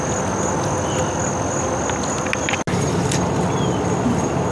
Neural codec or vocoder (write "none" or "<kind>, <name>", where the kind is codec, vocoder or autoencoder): none